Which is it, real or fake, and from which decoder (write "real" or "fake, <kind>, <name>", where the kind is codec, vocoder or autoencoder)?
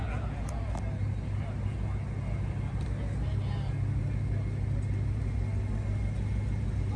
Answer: real